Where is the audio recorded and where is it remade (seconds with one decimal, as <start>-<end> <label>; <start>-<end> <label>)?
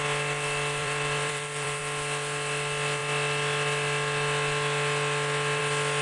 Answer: 0.0-0.8 recorded; 0.8-1.8 remade; 1.8-6.0 recorded